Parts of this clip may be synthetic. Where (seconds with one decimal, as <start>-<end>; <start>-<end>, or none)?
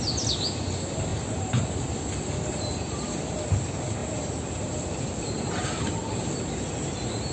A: 1.1-2.0